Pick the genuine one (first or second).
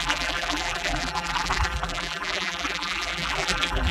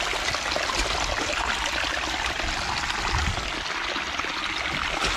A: second